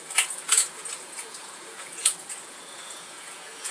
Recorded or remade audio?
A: remade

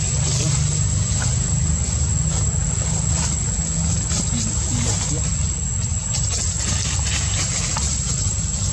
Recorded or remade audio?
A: recorded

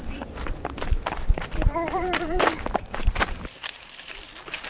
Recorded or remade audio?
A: remade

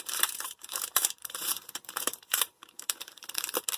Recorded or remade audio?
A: remade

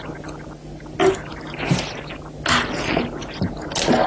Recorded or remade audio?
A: recorded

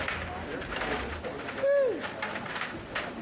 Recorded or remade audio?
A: recorded